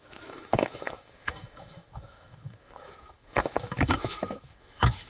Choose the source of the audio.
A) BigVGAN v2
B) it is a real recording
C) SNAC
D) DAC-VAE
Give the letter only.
D